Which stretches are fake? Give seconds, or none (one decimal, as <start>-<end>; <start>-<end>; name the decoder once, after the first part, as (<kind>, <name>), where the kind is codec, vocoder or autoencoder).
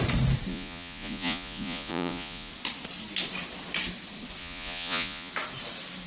0.5-2.5 (vocoder, Vocos); 4.4-5.3